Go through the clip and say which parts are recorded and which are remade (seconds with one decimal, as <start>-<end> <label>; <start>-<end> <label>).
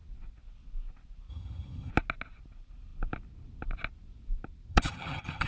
0.0-1.3 recorded; 1.3-1.9 remade; 1.9-4.7 recorded; 4.7-5.5 remade